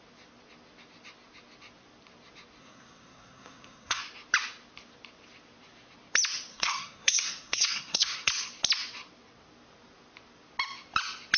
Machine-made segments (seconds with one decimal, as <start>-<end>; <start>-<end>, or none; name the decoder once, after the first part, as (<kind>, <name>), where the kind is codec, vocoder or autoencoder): 2.6-4.0 (codec, SNAC); 6.5-8.3